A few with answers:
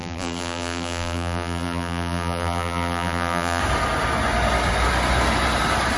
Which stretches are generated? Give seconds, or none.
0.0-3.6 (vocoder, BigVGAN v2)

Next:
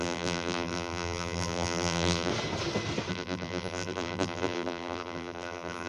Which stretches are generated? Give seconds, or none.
0.0-2.3 (vocoder, BigVGAN v2); 3.1-5.9

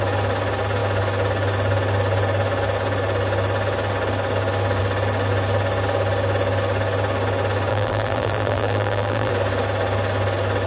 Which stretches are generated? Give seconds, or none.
7.7-9.3 (vocoder, BigVGAN v2)